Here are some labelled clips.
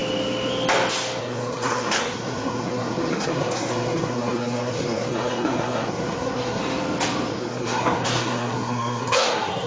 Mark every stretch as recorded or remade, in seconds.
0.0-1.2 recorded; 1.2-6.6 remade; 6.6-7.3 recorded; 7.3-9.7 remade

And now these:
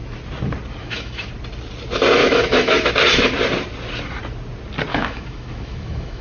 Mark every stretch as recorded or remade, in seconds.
0.0-0.8 recorded; 0.8-1.3 remade; 1.3-2.2 recorded; 2.2-2.9 remade; 2.9-4.9 recorded; 4.9-6.2 remade